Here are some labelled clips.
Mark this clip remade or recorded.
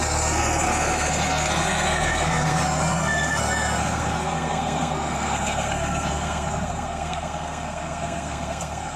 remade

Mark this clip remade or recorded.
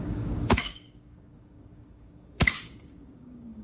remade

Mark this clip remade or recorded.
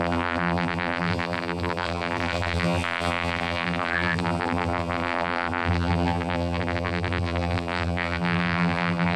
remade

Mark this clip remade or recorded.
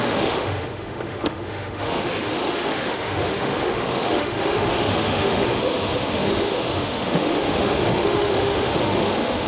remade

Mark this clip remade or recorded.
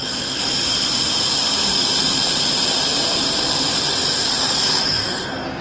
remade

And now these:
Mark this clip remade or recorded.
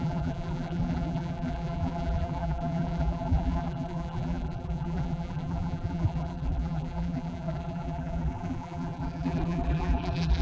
remade